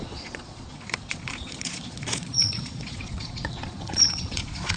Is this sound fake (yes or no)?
yes